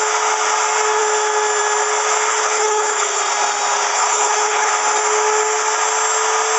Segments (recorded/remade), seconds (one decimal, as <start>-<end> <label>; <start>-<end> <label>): 0.0-2.3 recorded; 2.3-3.2 remade; 3.2-3.9 recorded; 3.9-4.7 remade; 4.7-6.6 recorded